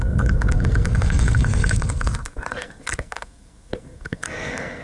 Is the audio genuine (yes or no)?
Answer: no